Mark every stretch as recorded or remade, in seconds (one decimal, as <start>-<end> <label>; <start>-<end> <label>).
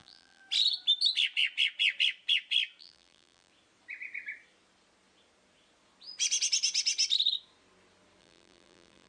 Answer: 0.0-0.4 remade; 0.4-2.8 recorded; 2.8-3.5 remade; 3.5-8.2 recorded; 8.2-9.1 remade